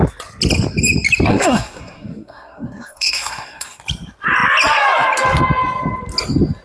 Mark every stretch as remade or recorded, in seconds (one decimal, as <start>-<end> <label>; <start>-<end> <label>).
0.0-1.3 recorded; 1.3-3.8 remade; 3.8-6.6 recorded

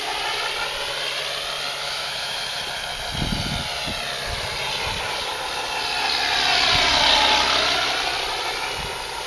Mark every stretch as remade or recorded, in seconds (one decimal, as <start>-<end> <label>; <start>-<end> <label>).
0.0-1.8 recorded; 1.8-2.6 remade; 2.6-9.3 recorded

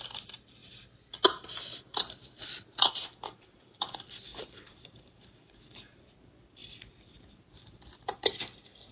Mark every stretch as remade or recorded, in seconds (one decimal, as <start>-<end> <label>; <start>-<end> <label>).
0.0-4.3 recorded; 4.3-5.7 remade; 5.7-8.9 recorded

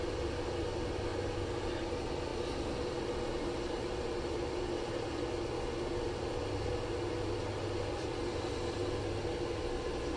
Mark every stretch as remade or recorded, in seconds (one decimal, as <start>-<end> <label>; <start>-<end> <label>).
0.0-10.2 recorded

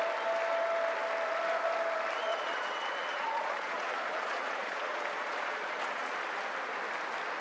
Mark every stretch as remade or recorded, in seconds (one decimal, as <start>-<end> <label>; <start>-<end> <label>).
0.0-2.3 recorded; 2.3-6.2 remade; 6.2-7.4 recorded

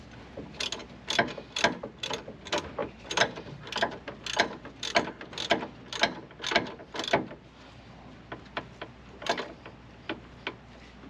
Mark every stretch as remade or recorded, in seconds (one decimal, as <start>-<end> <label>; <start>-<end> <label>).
0.0-11.1 recorded

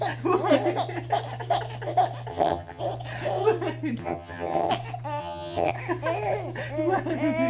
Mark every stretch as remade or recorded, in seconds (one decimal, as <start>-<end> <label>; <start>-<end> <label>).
0.0-2.3 recorded; 2.3-2.8 remade; 2.8-4.0 recorded; 4.0-4.7 remade; 4.7-5.2 recorded; 5.2-5.7 remade; 5.7-7.5 recorded

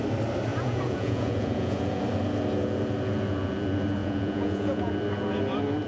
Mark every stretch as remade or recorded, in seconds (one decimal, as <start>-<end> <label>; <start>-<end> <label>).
0.0-0.5 recorded; 0.5-2.0 remade; 2.0-4.0 recorded; 4.0-4.9 remade; 4.9-5.9 recorded